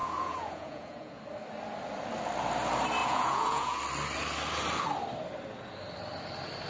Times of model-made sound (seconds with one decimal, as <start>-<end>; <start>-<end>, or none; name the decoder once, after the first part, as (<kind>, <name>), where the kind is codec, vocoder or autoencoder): 0.0-1.2 (vocoder, Vocos); 3.0-3.8